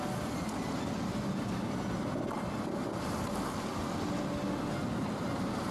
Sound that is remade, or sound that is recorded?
recorded